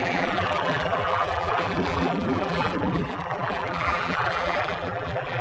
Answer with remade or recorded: remade